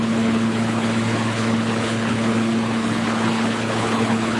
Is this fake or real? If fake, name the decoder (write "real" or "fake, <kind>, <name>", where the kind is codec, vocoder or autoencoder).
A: fake, codec, HILCodec